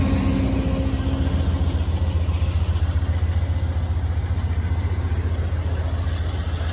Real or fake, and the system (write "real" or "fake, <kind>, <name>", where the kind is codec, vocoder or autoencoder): real